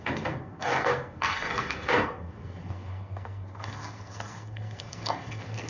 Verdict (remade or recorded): remade